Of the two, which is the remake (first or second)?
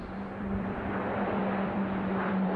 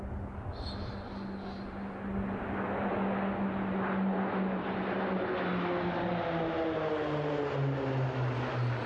first